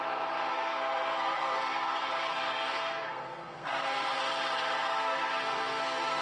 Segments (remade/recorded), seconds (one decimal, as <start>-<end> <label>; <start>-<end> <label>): 0.0-0.5 recorded; 0.5-4.2 remade; 4.2-4.9 recorded; 4.9-6.2 remade